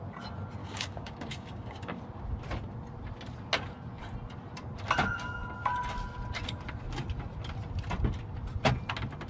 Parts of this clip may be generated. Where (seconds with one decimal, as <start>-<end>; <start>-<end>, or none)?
0.6-2.0